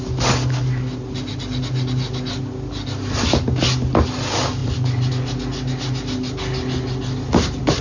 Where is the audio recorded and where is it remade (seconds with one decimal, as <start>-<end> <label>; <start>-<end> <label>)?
0.0-4.6 recorded; 4.6-5.1 remade; 5.1-7.8 recorded